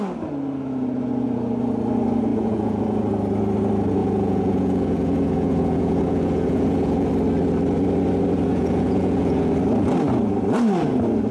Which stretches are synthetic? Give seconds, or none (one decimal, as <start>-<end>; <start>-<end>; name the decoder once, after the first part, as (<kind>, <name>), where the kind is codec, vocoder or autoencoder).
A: 2.3-3.0 (vocoder, Vocos); 4.0-7.1; 8.5-9.5